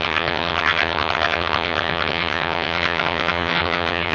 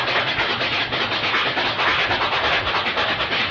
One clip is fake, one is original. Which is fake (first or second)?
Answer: first